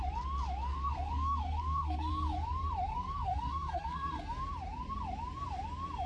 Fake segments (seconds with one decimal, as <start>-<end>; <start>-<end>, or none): 0.7-2.1; 2.9-4.2